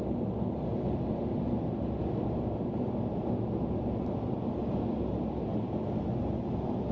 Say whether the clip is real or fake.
real